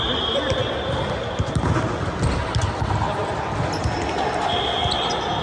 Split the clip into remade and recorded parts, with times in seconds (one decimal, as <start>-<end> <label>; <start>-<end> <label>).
0.0-5.4 recorded